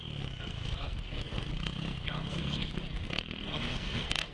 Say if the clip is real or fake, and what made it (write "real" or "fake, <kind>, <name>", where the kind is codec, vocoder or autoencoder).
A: fake, codec, SNAC